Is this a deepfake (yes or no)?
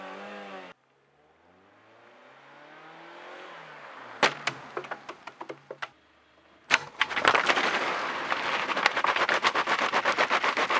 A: no